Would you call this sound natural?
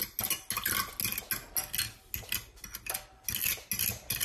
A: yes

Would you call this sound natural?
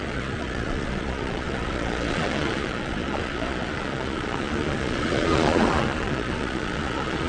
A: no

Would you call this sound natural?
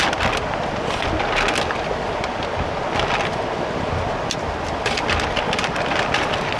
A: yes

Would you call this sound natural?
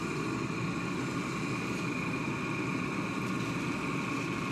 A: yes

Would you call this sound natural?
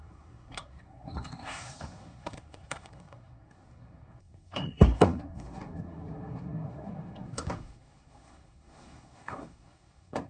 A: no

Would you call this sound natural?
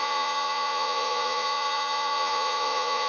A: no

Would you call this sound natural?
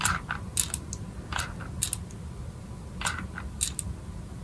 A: yes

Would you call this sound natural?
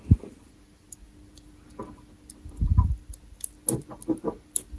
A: yes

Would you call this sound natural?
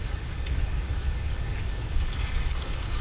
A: no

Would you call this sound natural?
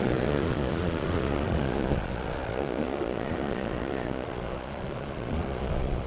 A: no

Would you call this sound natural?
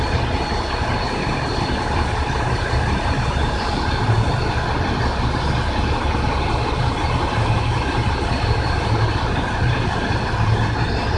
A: yes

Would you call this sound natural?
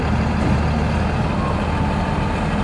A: yes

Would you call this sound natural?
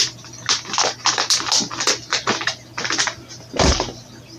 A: yes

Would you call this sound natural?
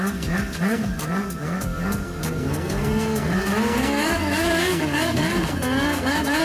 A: no